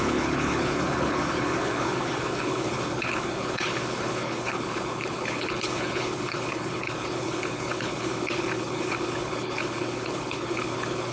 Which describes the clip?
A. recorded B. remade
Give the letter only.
B